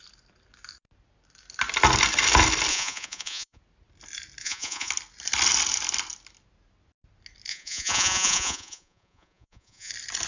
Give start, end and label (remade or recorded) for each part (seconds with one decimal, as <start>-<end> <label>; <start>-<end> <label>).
0.0-2.7 recorded; 2.7-3.6 remade; 3.6-4.4 recorded; 4.4-4.9 remade; 4.9-7.5 recorded; 7.5-9.9 remade; 9.9-10.3 recorded